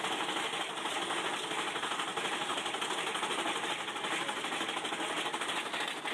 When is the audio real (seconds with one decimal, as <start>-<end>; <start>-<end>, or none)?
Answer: 0.0-6.1